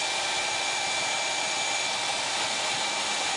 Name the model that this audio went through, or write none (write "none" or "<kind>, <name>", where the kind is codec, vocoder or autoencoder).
none